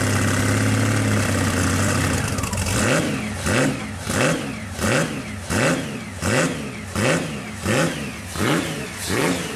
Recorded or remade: recorded